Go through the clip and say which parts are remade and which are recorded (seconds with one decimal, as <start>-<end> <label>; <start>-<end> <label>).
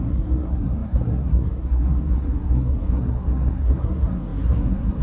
0.0-5.0 remade